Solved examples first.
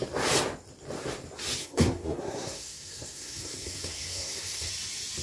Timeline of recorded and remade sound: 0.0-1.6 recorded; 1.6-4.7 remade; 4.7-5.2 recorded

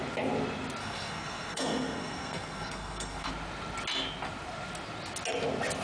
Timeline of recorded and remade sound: 0.0-0.8 recorded; 0.8-3.3 remade; 3.3-5.8 recorded

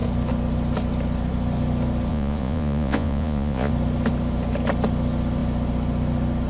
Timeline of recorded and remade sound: 0.0-2.1 recorded; 2.1-3.7 remade; 3.7-6.5 recorded

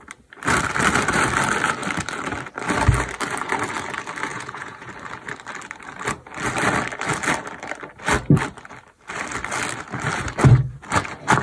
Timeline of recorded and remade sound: 0.0-4.3 recorded; 4.3-4.9 remade; 4.9-11.4 recorded

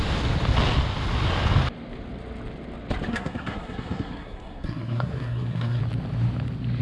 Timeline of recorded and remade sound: 0.0-3.1 recorded; 3.1-5.8 remade; 5.8-6.8 recorded

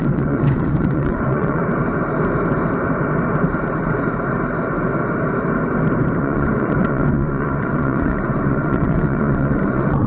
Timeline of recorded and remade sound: 0.0-1.6 remade; 1.6-6.2 recorded; 6.2-10.1 remade

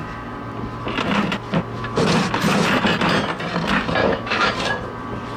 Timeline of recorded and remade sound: 0.0-4.0 recorded; 4.0-4.5 remade; 4.5-5.4 recorded